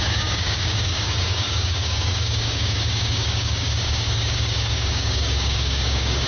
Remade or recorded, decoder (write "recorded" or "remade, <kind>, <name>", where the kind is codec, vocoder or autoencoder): remade, codec, DAC